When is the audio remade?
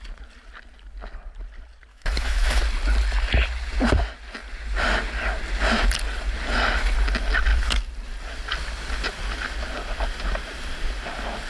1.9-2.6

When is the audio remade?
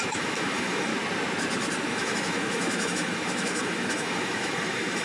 0.0-0.9; 1.8-5.0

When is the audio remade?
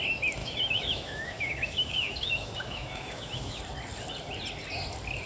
0.4-3.6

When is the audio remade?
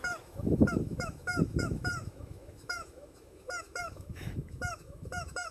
0.0-5.5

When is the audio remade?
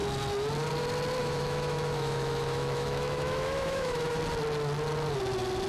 1.2-4.2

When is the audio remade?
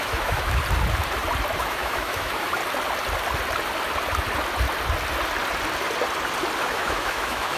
0.0-0.6; 1.6-2.6; 6.6-7.6